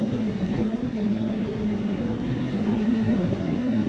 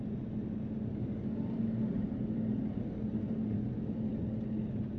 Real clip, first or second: second